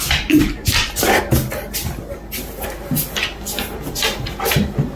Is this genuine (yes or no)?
yes